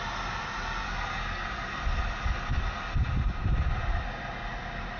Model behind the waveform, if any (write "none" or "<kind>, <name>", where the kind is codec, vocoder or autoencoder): none